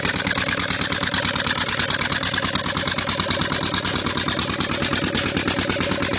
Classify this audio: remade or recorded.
recorded